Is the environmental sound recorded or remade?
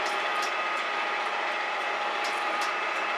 recorded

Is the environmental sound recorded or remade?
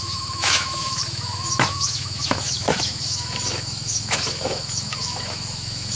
remade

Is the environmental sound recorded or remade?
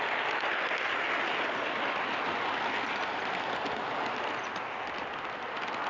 recorded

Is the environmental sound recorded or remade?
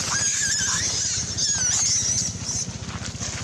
recorded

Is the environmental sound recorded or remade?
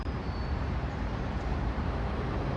remade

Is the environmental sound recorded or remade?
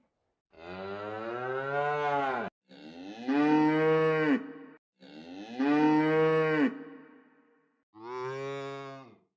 recorded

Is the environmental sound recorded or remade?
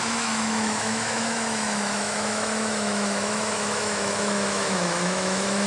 remade